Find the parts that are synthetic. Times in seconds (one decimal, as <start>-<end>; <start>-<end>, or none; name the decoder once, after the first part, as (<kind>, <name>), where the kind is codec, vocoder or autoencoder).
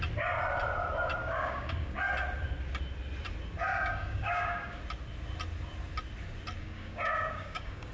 1.2-2.0 (codec, DAC); 3.7-4.8; 6.6-7.9